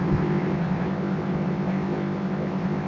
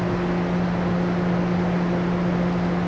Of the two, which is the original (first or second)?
second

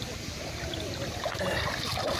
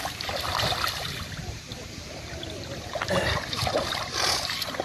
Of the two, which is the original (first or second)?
first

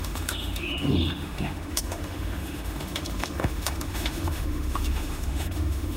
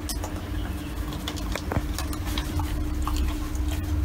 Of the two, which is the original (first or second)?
second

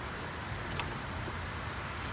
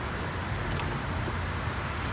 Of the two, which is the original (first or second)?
second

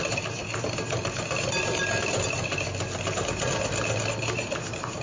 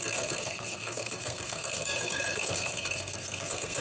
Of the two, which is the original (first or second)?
first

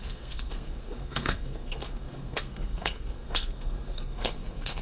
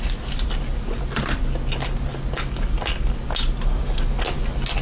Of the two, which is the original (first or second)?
second